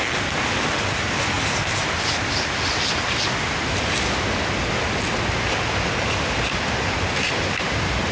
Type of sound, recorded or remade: recorded